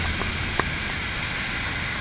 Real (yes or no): yes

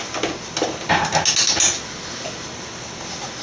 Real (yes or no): yes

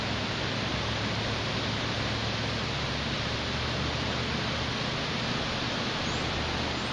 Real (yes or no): yes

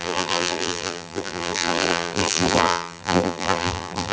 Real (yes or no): no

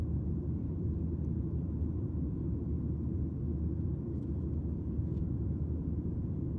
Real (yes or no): no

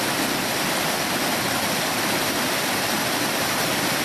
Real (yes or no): yes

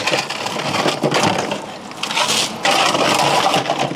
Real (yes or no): yes